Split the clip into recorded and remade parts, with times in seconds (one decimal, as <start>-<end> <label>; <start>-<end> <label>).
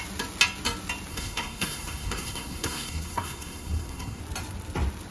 0.0-1.1 recorded; 1.1-4.2 remade; 4.2-5.1 recorded